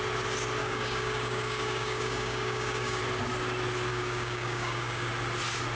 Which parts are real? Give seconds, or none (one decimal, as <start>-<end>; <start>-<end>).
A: 0.0-0.6; 3.0-3.9; 5.1-5.8